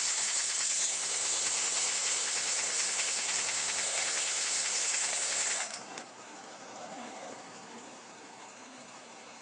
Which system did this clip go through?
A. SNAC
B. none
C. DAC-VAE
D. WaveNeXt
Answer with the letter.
A